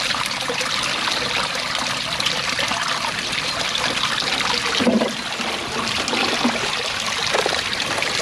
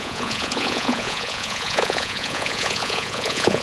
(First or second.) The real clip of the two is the first